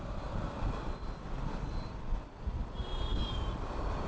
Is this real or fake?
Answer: real